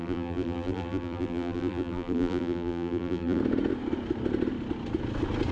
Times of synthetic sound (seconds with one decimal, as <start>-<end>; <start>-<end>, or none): 0.0-3.4